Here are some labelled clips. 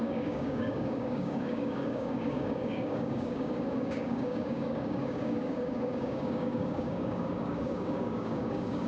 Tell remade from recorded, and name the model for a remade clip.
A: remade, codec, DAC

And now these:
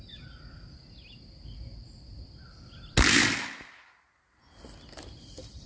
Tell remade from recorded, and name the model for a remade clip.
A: recorded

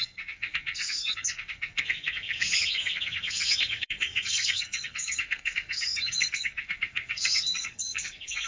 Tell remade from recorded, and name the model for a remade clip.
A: remade, codec, SNAC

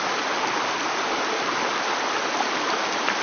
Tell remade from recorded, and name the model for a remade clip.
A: recorded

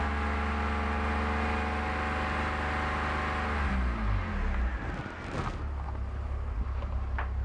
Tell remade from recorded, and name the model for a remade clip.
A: recorded